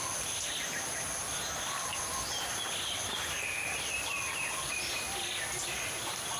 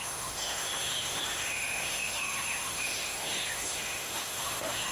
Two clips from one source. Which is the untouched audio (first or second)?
first